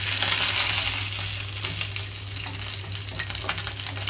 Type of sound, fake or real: real